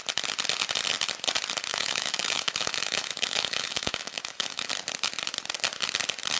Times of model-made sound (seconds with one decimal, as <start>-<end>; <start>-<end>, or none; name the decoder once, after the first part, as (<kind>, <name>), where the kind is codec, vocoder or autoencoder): 1.7-4.7 (autoencoder, DAC-VAE)